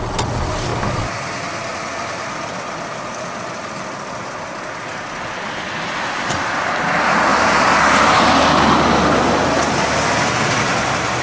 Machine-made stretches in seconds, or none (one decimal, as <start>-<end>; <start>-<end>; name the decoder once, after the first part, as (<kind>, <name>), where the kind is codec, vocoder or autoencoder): none